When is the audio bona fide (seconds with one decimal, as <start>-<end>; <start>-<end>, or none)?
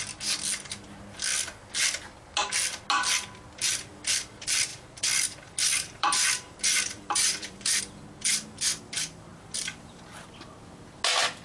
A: 0.0-4.7; 7.8-9.3; 10.1-11.4